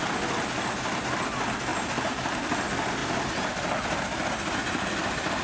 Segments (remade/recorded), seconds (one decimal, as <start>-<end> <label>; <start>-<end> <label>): 0.0-5.4 recorded